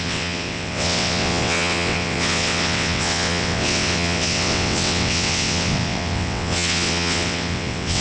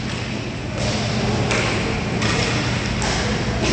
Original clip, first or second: second